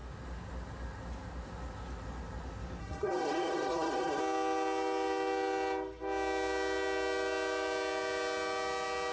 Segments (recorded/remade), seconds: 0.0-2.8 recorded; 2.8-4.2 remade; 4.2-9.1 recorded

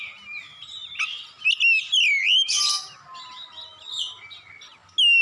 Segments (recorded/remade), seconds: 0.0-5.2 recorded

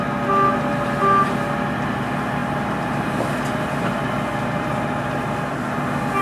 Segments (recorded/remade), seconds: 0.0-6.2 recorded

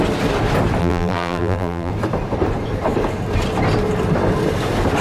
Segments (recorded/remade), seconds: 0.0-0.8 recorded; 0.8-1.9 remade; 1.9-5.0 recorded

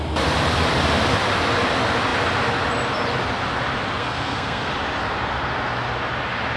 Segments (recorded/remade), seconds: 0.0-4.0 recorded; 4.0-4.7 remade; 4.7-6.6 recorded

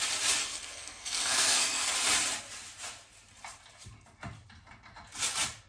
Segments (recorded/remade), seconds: 0.0-0.4 recorded; 0.4-1.9 remade; 1.9-5.7 recorded

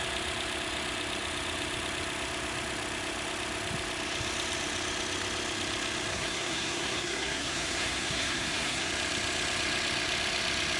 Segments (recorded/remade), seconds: 0.0-6.1 recorded; 6.1-8.9 remade; 8.9-10.8 recorded